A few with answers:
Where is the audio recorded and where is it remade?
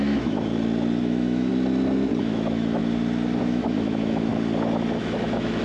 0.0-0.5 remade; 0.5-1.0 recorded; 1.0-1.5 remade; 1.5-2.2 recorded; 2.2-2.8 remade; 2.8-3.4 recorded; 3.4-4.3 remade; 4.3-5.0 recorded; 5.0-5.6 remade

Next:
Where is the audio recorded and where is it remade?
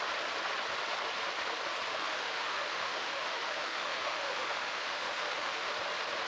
0.0-1.9 recorded; 1.9-5.7 remade; 5.7-6.3 recorded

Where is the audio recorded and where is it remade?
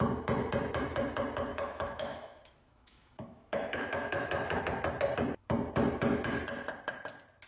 0.0-1.5 recorded; 1.5-4.6 remade; 4.6-7.5 recorded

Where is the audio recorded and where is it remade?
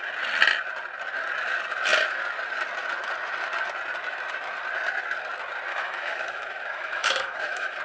0.0-5.7 recorded; 5.7-7.8 remade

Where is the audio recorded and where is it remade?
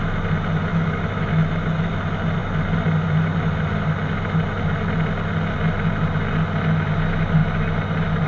0.0-0.7 recorded; 0.7-1.9 remade; 1.9-8.3 recorded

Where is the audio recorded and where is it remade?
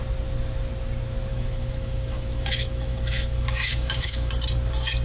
0.0-1.3 recorded; 1.3-4.3 remade; 4.3-5.0 recorded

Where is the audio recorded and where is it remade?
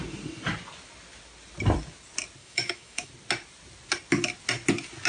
0.0-2.4 recorded; 2.4-3.1 remade; 3.1-5.1 recorded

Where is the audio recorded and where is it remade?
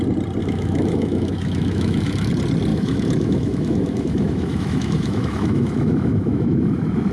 0.0-0.4 recorded; 0.4-2.3 remade; 2.3-2.7 recorded; 2.7-7.1 remade